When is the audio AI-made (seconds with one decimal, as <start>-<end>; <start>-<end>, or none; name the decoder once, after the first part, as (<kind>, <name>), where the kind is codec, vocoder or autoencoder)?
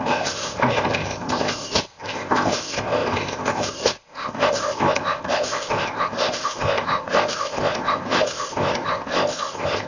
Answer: 0.0-9.9 (codec, ZipCodec)